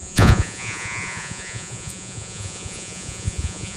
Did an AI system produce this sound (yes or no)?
yes